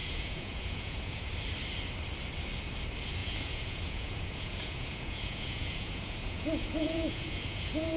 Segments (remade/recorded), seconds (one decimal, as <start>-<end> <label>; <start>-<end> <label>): 0.0-1.2 remade; 1.2-3.2 recorded; 3.2-8.0 remade